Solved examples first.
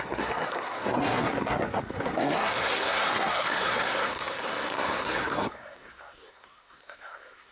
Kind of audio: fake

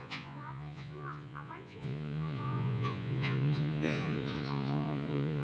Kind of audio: fake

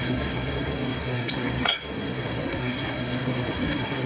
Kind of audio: fake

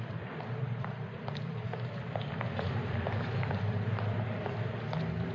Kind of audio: fake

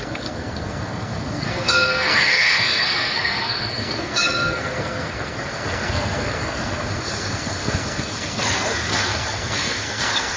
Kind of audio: fake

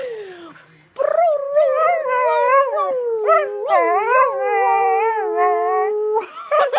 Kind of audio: real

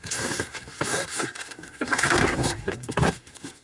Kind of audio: fake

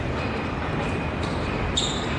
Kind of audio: real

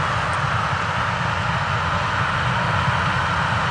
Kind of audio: real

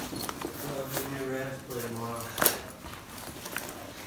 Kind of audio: real